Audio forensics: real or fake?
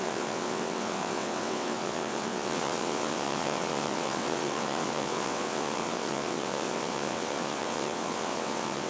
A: fake